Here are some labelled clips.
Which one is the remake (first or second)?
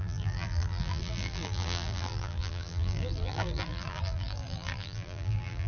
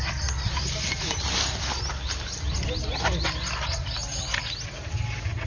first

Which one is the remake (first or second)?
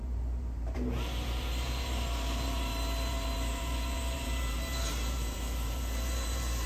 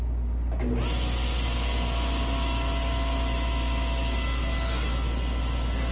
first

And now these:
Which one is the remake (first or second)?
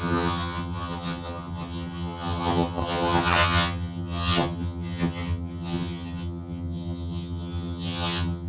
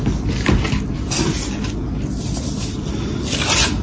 first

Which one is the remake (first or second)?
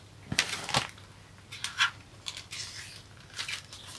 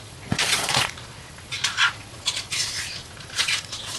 second